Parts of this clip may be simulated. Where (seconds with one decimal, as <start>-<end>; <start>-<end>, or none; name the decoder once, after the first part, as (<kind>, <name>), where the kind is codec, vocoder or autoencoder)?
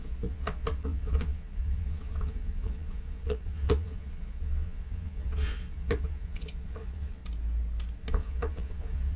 0.0-7.2 (vocoder, Vocos); 8.1-9.2